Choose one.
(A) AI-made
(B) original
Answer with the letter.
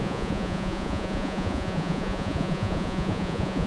A